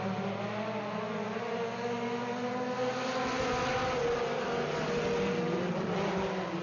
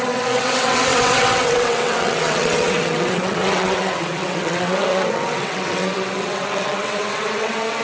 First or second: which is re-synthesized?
second